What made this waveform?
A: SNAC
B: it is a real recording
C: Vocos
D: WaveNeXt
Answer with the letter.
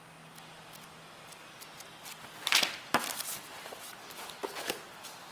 B